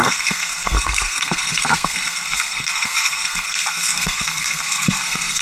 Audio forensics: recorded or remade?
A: remade